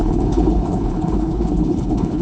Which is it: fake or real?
fake